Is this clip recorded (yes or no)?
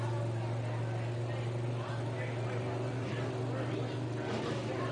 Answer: yes